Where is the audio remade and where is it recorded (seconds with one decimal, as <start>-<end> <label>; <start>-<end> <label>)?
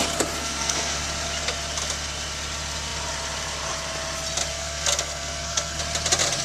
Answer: 0.0-0.4 recorded; 0.4-1.0 remade; 1.0-4.5 recorded; 4.5-5.8 remade; 5.8-6.4 recorded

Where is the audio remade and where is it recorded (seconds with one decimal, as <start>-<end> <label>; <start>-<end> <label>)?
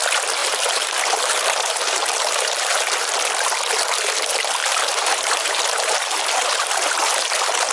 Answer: 0.0-0.4 recorded; 0.4-3.0 remade; 3.0-4.6 recorded; 4.6-7.7 remade